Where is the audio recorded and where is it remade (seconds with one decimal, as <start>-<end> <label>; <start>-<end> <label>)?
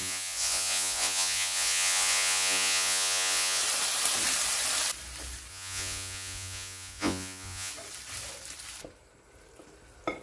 0.0-3.6 remade; 3.6-5.5 recorded; 5.5-7.7 remade; 7.7-10.2 recorded